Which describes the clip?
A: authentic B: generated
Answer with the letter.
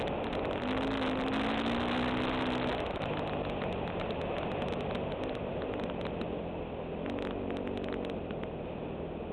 A